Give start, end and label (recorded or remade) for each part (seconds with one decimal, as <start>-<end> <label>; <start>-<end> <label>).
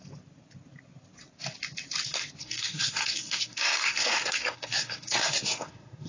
0.0-2.4 recorded; 2.4-6.1 remade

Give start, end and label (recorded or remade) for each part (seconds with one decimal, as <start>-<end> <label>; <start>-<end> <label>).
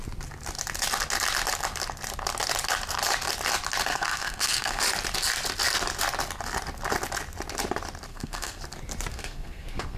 0.0-3.9 recorded; 3.9-4.8 remade; 4.8-8.1 recorded; 8.1-8.6 remade; 8.6-9.1 recorded; 9.1-10.0 remade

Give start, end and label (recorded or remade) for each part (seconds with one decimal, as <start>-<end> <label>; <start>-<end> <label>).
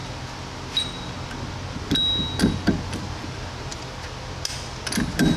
0.0-5.4 recorded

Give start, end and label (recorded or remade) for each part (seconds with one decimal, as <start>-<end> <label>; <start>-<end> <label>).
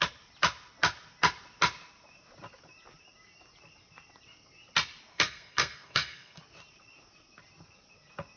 0.0-5.1 recorded; 5.1-6.4 remade; 6.4-8.4 recorded